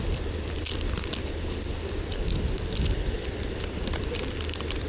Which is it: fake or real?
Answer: fake